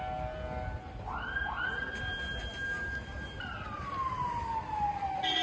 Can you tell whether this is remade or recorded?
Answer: recorded